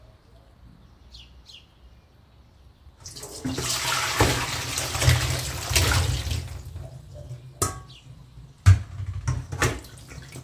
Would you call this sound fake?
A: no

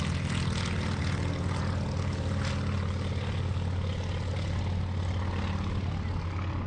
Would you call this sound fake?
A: no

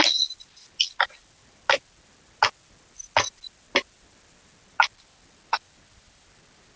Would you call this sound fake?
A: no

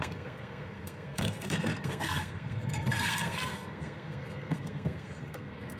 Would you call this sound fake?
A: yes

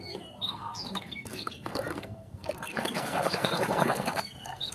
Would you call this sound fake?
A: yes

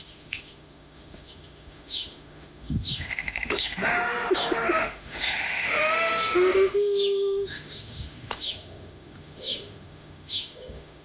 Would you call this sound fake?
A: yes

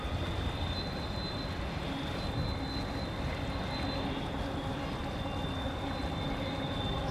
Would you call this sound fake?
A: no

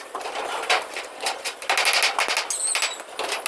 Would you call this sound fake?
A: no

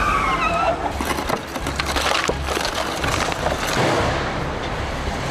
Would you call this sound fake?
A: no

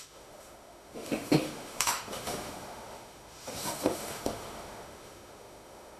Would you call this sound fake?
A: yes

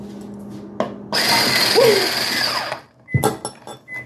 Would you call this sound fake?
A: no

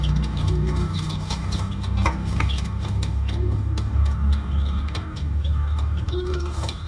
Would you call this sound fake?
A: yes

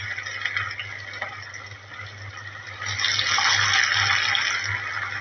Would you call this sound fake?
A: no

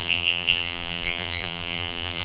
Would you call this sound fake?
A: yes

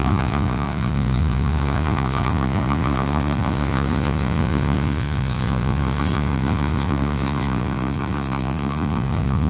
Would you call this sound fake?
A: yes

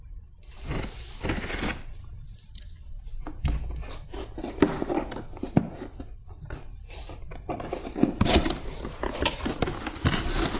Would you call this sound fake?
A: no